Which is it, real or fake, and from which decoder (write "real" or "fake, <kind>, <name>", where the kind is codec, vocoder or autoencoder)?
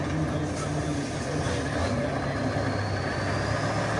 real